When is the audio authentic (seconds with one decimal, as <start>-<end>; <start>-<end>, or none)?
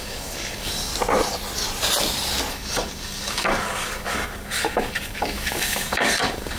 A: 0.9-2.5